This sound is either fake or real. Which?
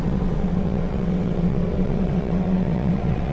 fake